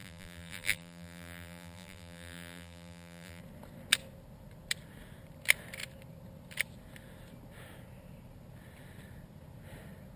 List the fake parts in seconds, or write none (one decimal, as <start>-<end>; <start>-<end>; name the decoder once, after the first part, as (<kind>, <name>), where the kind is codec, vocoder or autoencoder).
0.0-3.4 (vocoder, BigVGAN v2)